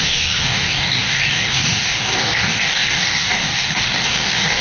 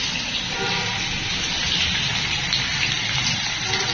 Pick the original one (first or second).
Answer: second